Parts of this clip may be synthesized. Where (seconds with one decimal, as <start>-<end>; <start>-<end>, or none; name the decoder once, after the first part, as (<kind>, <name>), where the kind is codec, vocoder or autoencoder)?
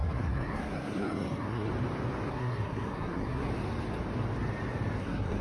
0.0-1.7 (codec, SNAC); 2.3-3.5; 5.0-5.4